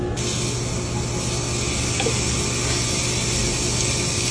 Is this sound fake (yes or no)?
no